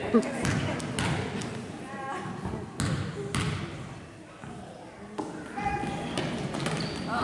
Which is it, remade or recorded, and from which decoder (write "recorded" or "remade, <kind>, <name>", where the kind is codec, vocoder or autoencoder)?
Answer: recorded